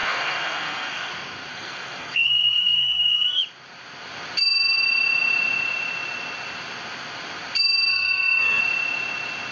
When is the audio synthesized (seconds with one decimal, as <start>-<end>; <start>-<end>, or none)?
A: 0.0-1.1; 1.5-3.4; 7.9-8.6

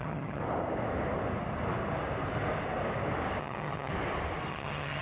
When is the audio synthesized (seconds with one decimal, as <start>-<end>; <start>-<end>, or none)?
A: 0.0-0.4; 3.4-3.9; 4.5-5.0

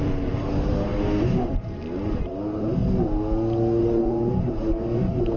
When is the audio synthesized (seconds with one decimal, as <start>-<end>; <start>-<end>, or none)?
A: 0.0-0.9; 2.1-2.8; 3.8-5.4

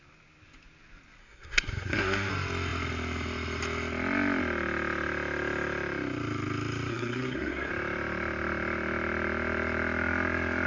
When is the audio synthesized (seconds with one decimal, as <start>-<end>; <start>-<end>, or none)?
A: 1.2-2.3; 6.9-7.7

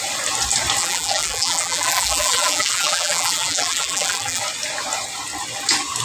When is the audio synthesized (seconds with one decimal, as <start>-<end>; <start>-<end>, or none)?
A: 0.8-4.4

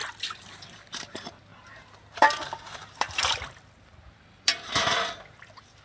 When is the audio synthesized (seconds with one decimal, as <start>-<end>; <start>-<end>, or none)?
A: 0.9-5.8